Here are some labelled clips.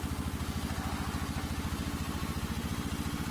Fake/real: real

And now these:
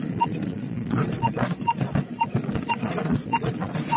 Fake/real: fake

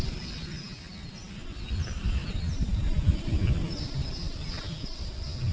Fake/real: real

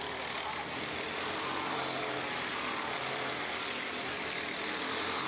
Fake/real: real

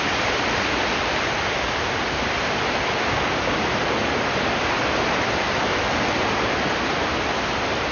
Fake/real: real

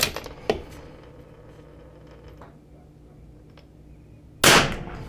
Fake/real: real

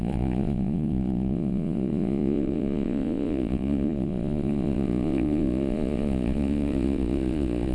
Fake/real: fake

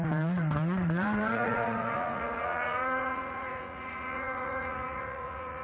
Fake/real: fake